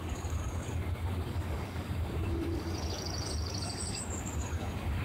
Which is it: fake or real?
fake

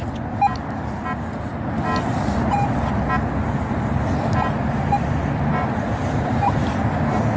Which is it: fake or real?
real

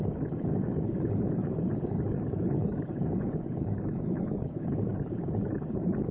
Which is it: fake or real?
fake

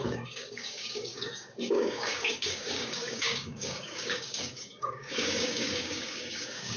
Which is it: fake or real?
fake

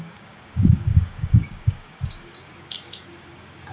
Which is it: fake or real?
fake